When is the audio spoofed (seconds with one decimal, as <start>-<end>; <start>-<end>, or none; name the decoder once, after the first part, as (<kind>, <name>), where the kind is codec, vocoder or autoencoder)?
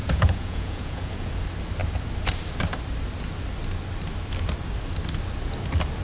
0.0-1.3 (vocoder, Vocos)